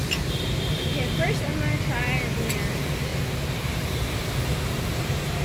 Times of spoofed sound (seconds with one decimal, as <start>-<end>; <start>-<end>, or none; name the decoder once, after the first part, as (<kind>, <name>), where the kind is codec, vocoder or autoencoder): 0.0-1.5 (vocoder, BigVGAN v2); 2.7-3.1; 3.6-5.4